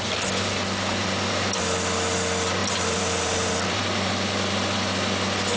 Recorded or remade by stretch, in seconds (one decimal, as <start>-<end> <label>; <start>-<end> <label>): 0.0-1.0 recorded; 1.0-1.6 remade; 1.6-2.6 recorded; 2.6-4.1 remade; 4.1-5.6 recorded